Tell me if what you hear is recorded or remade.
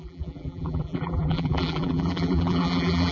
remade